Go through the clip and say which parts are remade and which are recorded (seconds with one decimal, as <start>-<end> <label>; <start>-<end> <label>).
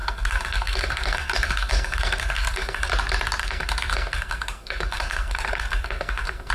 0.0-2.9 remade; 2.9-3.4 recorded; 3.4-6.5 remade